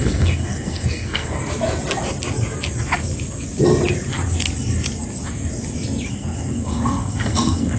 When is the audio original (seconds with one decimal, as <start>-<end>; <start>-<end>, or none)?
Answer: 1.4-6.1

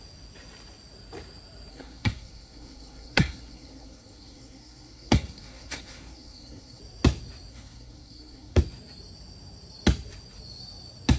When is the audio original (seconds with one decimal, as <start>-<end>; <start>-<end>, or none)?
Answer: 0.0-1.7; 6.8-7.5; 8.6-11.2